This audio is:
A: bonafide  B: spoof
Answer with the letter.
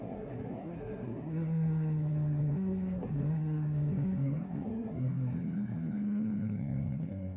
B